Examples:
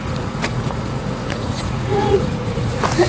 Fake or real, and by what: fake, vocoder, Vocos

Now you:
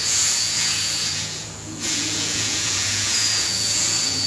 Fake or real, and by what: fake, vocoder, Vocos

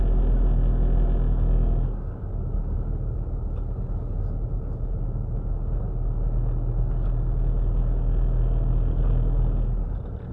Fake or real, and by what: real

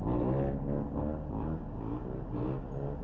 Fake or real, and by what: real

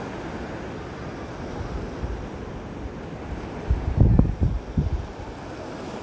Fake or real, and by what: real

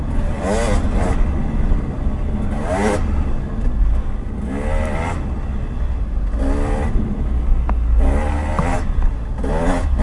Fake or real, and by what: real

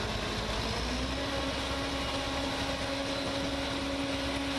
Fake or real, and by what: real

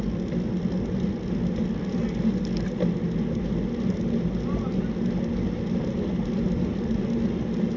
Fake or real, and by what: real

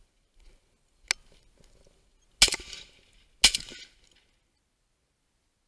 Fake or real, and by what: real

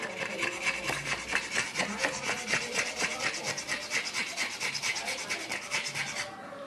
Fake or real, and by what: real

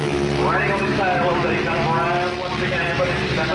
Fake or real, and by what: real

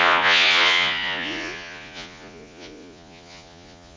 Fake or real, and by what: fake, vocoder, Vocos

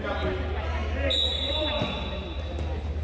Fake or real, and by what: real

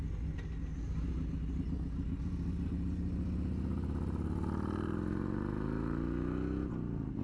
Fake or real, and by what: real